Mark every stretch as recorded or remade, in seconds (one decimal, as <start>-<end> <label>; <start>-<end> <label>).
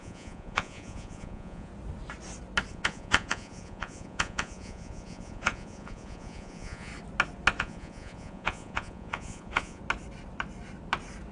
0.0-1.7 remade; 1.7-2.7 recorded; 2.7-6.9 remade; 6.9-7.6 recorded; 7.6-9.8 remade; 9.8-11.3 recorded